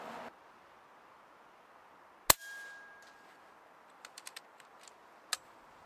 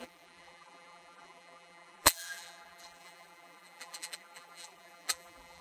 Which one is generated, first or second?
second